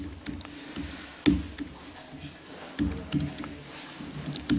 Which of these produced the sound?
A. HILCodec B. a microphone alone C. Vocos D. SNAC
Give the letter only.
B